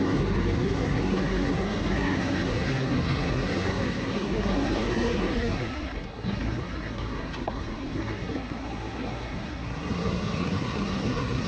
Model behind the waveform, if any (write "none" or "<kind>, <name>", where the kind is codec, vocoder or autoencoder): codec, SNAC